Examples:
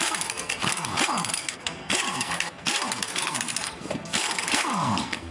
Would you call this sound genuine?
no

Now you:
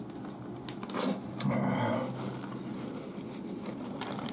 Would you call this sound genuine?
yes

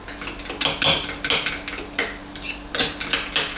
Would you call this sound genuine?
yes